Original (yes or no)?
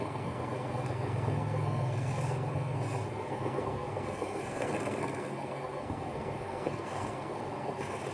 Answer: no